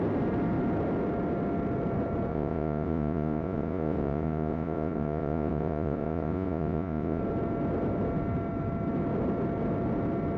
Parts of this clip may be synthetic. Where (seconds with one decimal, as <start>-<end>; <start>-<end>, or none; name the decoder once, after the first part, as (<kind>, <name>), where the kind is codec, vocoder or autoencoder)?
2.3-7.2 (vocoder, Vocos)